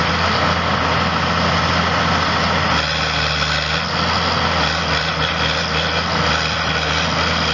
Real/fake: real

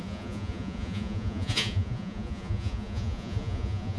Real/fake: fake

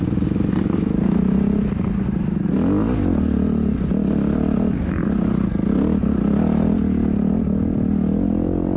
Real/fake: real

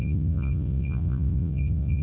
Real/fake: fake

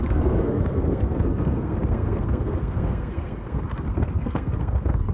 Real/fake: fake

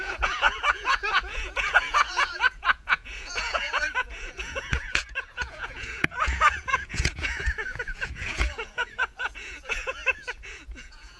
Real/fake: fake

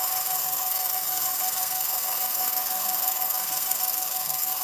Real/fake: fake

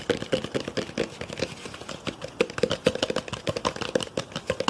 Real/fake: real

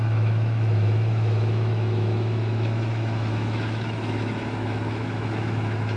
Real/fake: fake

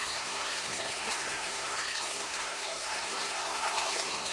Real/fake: fake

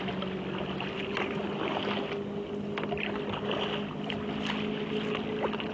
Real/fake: real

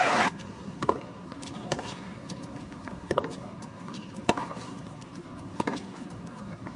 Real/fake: fake